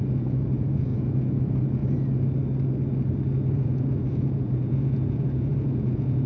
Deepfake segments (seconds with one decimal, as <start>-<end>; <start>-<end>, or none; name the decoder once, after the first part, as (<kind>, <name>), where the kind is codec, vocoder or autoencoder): 0.0-1.8 (vocoder, Vocos); 3.5-6.3